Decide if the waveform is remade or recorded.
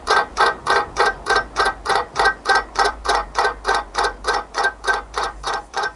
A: remade